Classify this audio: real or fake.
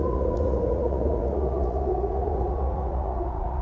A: fake